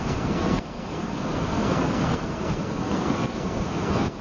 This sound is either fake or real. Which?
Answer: fake